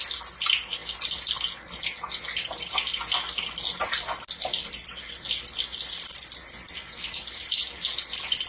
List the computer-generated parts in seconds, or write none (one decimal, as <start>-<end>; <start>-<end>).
none